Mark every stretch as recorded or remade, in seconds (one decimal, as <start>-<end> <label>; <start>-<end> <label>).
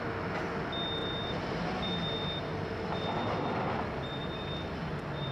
0.0-1.0 recorded; 1.0-1.6 remade; 1.6-5.3 recorded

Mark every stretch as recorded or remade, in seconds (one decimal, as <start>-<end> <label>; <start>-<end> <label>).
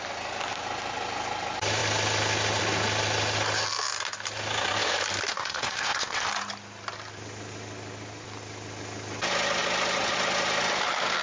0.0-5.4 recorded; 5.4-6.3 remade; 6.3-11.2 recorded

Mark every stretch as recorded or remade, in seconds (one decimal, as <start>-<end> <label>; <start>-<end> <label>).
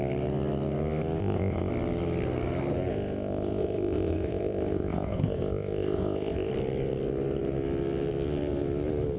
0.0-1.2 recorded; 1.2-1.7 remade; 1.7-2.9 recorded; 2.9-6.5 remade; 6.5-9.2 recorded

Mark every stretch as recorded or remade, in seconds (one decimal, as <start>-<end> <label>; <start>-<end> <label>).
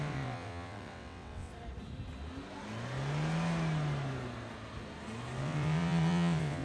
0.0-1.5 remade; 1.5-5.4 recorded; 5.4-6.6 remade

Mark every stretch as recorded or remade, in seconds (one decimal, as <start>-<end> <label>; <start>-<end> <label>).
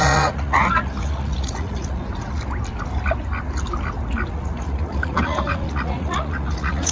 0.0-2.0 remade; 2.0-4.3 recorded; 4.3-6.9 remade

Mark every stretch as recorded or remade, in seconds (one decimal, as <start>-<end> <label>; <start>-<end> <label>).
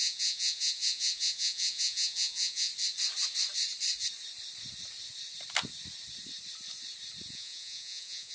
0.0-2.7 remade; 2.7-7.3 recorded; 7.3-8.3 remade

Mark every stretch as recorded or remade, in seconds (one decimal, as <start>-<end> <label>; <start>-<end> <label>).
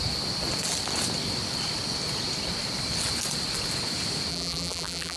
0.0-4.3 recorded; 4.3-5.2 remade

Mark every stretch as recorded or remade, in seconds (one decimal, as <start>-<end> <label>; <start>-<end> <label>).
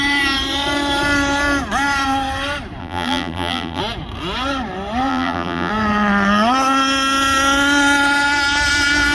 0.0-2.8 recorded; 2.8-3.8 remade; 3.8-5.1 recorded; 5.1-5.7 remade; 5.7-9.1 recorded